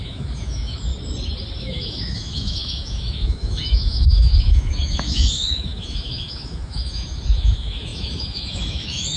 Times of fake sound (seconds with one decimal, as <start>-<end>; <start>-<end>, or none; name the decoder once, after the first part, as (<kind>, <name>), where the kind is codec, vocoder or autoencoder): 0.0-0.9 (autoencoder, DAC-VAE); 1.6-9.2